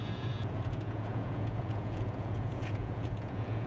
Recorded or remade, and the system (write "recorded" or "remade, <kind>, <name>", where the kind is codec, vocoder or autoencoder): remade, vocoder, Vocos